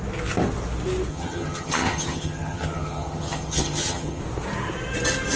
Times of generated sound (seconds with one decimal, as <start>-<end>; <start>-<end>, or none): 1.1-4.2